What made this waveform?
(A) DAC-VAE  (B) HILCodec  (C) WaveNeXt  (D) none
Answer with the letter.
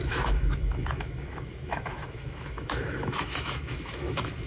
A